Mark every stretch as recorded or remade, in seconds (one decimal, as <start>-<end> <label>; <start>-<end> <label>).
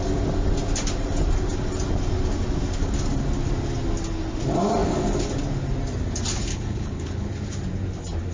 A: 0.0-6.5 recorded; 6.5-7.3 remade; 7.3-8.3 recorded